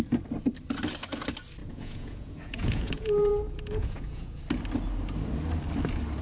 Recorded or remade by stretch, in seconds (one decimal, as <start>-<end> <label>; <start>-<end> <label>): 0.0-1.6 recorded; 1.6-4.4 remade; 4.4-6.2 recorded